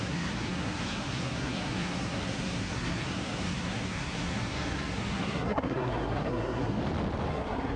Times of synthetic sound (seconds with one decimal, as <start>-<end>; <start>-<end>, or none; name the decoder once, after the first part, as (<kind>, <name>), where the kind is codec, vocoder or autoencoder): 0.0-6.8 (codec, SNAC); 7.3-7.8